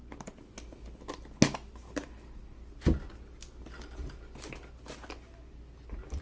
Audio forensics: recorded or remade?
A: recorded